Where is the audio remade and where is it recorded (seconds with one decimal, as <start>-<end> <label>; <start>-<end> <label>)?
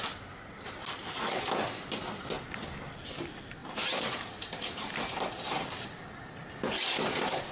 0.0-3.6 recorded; 3.6-5.1 remade; 5.1-7.5 recorded